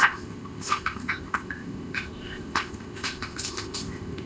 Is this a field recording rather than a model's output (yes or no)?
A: no